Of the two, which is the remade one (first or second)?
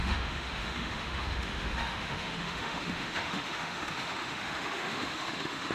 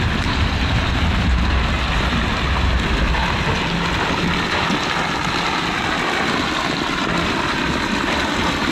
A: first